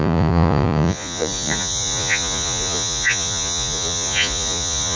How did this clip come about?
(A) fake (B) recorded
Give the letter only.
A